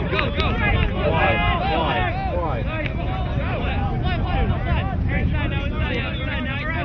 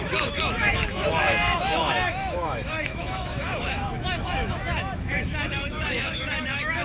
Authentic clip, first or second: first